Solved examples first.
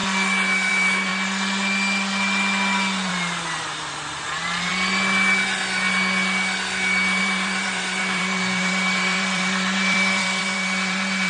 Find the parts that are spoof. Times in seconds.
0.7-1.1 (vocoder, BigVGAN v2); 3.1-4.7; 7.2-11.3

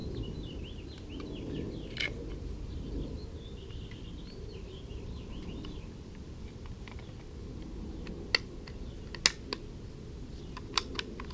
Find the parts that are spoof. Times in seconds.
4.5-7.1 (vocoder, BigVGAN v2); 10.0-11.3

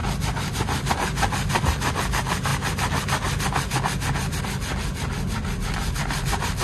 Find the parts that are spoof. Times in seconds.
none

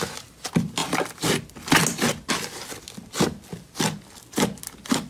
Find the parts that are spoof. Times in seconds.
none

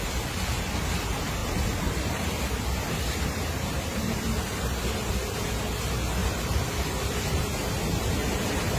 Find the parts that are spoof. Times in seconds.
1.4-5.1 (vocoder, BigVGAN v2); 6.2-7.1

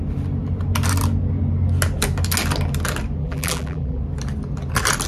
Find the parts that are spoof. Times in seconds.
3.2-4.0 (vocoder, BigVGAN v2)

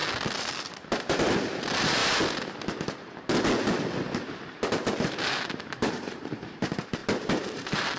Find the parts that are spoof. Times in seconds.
0.6-2.0 (vocoder, BigVGAN v2); 4.9-8.0